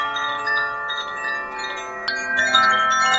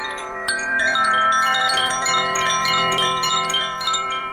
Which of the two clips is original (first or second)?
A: first